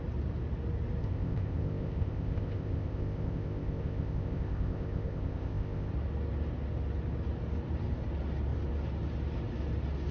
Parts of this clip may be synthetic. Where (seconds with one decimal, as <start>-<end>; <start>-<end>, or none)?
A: 1.0-5.9

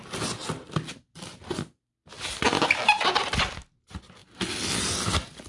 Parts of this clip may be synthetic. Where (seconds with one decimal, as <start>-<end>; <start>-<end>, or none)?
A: none

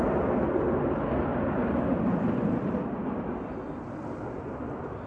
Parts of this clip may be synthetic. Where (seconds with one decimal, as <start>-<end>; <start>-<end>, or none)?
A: none

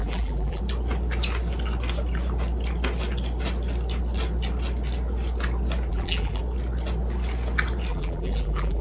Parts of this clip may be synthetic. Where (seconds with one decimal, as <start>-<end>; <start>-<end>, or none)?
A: 0.0-0.6; 5.9-6.4; 7.9-8.8

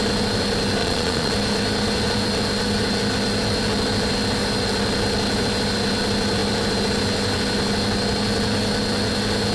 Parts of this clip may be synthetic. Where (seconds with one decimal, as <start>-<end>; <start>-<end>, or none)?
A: 0.8-1.3